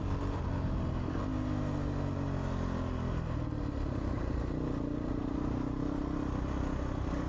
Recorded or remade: recorded